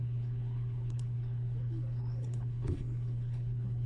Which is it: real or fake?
fake